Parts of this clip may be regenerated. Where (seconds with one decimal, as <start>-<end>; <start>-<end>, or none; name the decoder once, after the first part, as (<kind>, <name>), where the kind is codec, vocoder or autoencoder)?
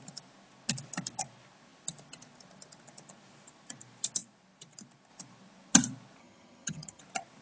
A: 6.2-7.0 (vocoder, HiFi-GAN)